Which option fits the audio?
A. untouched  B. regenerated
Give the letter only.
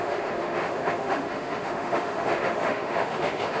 B